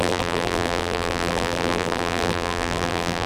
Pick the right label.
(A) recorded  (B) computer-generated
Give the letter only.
B